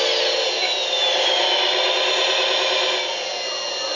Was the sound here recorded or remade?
recorded